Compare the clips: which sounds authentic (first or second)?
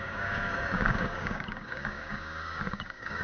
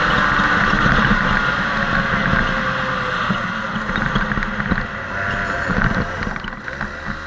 second